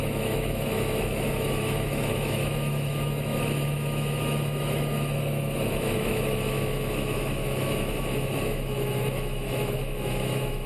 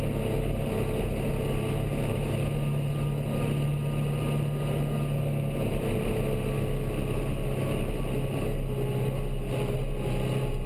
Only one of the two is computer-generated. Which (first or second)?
first